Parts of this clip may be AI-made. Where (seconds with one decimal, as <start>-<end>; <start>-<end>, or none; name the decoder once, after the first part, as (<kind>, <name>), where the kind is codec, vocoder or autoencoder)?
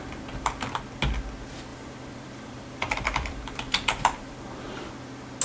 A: 1.7-4.9 (vocoder, BigVGAN v2)